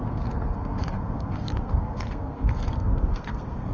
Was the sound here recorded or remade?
remade